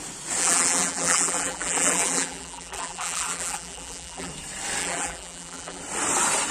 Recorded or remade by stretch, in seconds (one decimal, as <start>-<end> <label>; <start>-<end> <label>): 0.0-0.4 recorded; 0.4-4.3 remade; 4.3-4.8 recorded; 4.8-5.8 remade; 5.8-6.5 recorded